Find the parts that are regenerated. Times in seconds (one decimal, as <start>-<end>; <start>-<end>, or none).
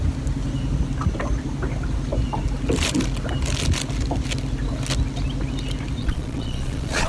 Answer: 6.0-7.1